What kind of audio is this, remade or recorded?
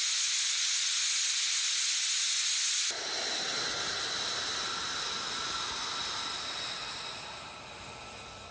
recorded